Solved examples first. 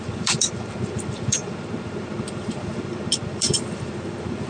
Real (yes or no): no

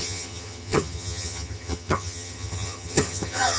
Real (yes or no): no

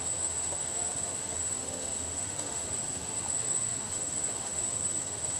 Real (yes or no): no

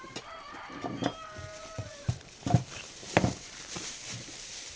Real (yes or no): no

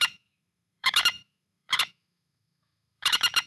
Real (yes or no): no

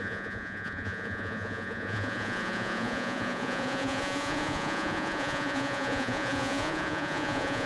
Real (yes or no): no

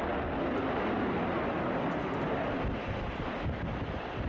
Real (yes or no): yes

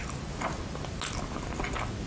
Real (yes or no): yes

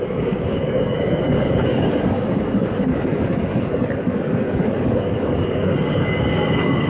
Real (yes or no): no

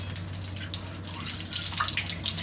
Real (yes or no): yes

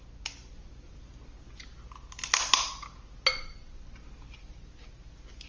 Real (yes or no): yes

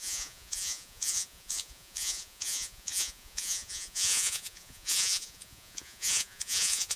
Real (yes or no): no